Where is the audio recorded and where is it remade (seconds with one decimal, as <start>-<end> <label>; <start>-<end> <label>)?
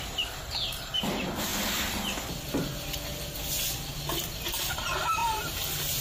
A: 0.0-1.5 remade; 1.5-4.2 recorded; 4.2-6.0 remade